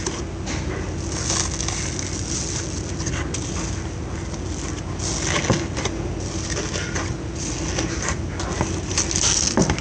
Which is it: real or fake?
real